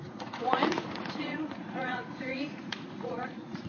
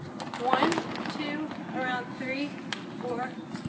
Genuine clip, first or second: second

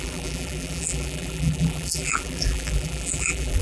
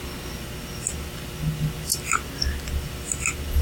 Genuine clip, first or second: second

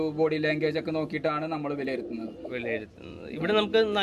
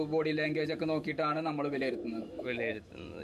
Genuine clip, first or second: first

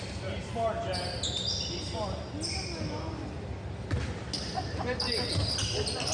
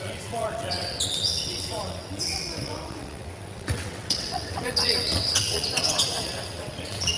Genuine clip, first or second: first